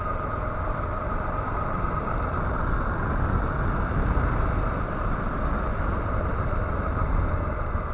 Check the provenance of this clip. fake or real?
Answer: real